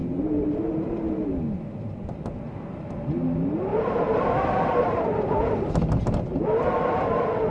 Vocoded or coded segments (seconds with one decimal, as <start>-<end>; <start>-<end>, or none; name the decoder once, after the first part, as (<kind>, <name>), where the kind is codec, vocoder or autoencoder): 0.0-1.0 (vocoder, BigVGAN v2); 3.7-5.7